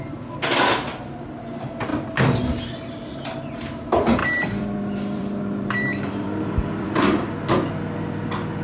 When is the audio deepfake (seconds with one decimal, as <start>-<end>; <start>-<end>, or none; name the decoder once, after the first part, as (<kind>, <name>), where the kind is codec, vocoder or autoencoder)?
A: 4.2-7.3 (vocoder, BigVGAN v2)

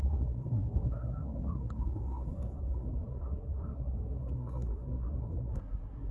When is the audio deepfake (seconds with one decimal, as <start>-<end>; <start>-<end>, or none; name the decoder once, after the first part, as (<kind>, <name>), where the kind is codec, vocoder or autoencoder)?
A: 0.0-6.1 (codec, SNAC)

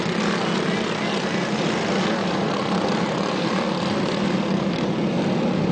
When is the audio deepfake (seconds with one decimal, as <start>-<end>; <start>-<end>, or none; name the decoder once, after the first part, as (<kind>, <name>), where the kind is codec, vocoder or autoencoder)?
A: 2.2-2.8 (vocoder, BigVGAN v2)

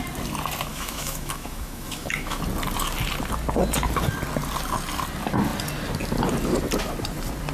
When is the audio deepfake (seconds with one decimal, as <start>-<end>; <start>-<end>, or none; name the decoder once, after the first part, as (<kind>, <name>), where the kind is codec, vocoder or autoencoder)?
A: 0.7-2.4 (autoencoder, DAC-VAE)

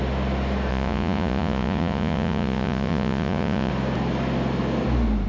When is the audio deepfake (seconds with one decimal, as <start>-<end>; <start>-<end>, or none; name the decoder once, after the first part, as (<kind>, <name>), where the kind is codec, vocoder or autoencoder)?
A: 0.7-3.7 (vocoder, Vocos)

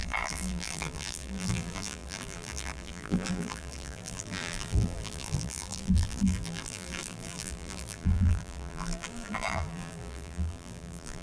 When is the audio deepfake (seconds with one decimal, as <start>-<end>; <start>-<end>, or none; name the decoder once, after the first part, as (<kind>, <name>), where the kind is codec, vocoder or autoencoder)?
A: 0.0-11.2 (vocoder, BigVGAN v2)

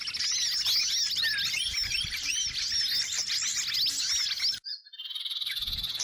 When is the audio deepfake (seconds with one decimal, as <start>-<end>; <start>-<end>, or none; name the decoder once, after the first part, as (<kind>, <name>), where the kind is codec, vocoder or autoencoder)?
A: none

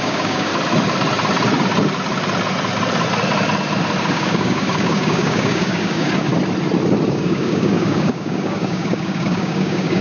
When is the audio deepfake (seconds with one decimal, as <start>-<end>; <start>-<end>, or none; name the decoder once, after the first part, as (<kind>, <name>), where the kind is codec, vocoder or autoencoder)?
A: 0.0-0.5 (codec, DAC); 4.0-6.3; 7.1-10.0